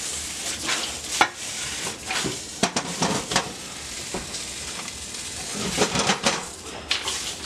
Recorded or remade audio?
remade